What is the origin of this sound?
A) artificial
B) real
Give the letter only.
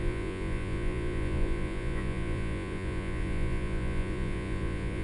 A